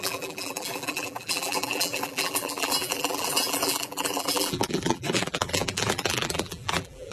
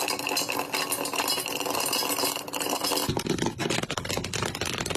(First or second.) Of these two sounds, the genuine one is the second